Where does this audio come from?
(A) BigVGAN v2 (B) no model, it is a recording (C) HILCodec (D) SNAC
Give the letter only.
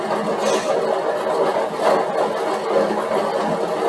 B